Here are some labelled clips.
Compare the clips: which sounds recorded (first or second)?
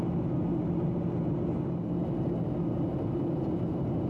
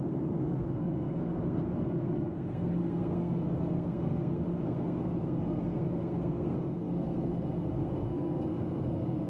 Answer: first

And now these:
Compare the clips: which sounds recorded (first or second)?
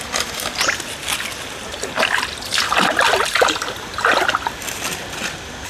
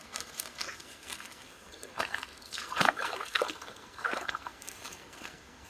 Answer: first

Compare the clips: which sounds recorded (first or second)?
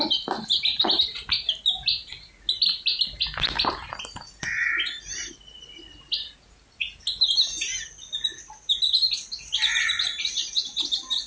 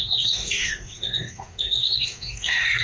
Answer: first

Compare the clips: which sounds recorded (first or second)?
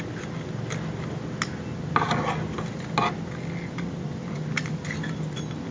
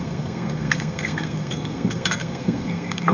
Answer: first